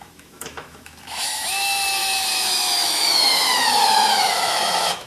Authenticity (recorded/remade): remade